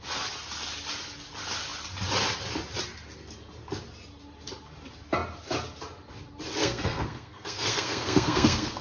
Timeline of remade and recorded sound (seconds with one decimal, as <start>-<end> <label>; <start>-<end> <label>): 0.0-6.6 recorded; 6.6-8.8 remade